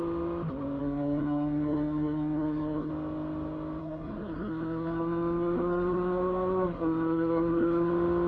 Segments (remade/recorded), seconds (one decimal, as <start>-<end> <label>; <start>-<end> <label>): 0.0-0.8 recorded; 0.8-2.9 remade; 2.9-3.8 recorded; 3.8-7.9 remade; 7.9-8.3 recorded